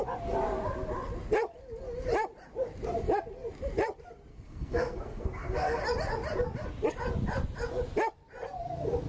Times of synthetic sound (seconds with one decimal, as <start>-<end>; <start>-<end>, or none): 4.3-5.8